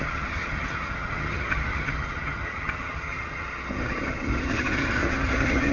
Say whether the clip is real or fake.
fake